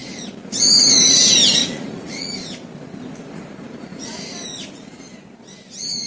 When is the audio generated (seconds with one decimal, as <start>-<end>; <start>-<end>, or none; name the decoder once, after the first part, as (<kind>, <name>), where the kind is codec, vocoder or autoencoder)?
1.6-2.3 (vocoder, Vocos); 3.2-4.2